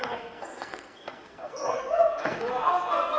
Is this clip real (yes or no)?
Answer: no